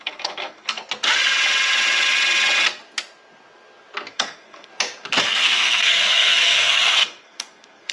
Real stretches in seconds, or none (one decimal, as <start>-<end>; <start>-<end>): 0.8-4.1; 4.7-5.2